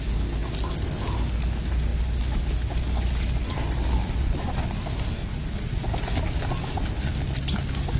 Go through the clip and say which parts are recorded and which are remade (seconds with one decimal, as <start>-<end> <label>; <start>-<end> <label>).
0.0-4.0 recorded; 4.0-4.7 remade; 4.7-5.2 recorded; 5.2-5.9 remade; 5.9-8.0 recorded